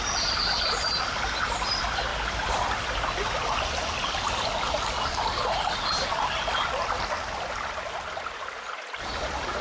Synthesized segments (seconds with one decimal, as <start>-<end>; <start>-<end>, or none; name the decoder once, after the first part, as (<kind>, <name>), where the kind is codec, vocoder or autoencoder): none